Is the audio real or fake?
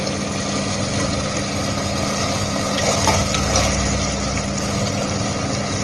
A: real